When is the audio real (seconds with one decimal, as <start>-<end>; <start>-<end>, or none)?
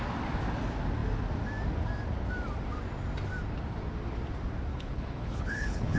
0.0-4.7